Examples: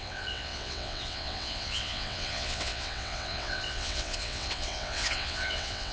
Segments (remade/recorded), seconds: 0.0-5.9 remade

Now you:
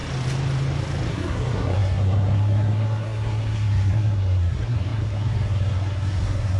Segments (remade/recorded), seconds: 0.0-1.1 recorded; 1.1-6.6 remade